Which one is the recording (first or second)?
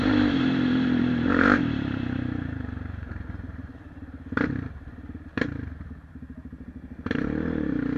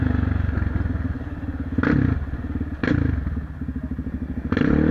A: second